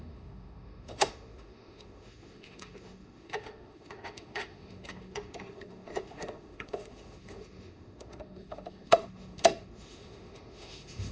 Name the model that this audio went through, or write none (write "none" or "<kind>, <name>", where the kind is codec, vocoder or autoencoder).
autoencoder, DAC-VAE